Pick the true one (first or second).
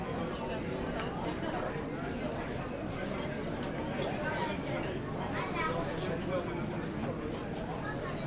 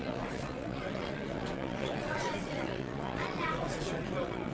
first